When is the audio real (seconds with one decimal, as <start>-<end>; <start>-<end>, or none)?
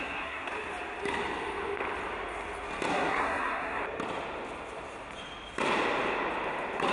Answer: 0.5-2.9; 3.8-6.9